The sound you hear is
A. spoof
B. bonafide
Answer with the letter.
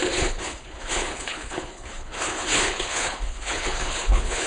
A